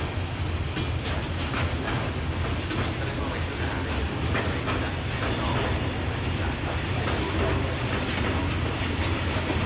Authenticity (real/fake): real